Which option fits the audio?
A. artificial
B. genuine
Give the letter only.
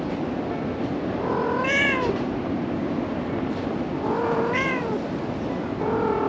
B